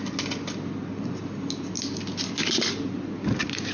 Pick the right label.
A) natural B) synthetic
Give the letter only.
A